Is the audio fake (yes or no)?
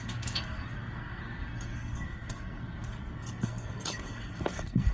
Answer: yes